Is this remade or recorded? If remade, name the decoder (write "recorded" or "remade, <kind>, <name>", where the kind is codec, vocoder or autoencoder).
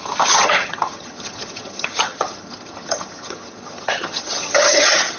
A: remade, vocoder, HiFi-GAN